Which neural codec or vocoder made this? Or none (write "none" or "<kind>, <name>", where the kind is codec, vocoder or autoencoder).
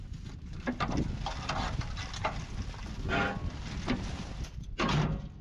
none